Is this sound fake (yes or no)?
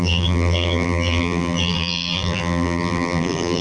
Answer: yes